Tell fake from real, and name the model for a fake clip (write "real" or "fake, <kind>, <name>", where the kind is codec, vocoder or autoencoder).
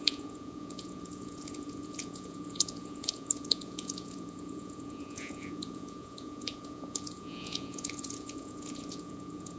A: fake, vocoder, Vocos